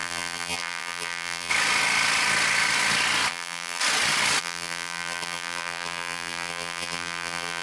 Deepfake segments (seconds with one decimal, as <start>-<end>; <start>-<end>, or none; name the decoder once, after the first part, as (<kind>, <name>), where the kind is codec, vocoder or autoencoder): 0.0-1.5 (vocoder, BigVGAN v2); 3.3-3.8; 4.4-7.6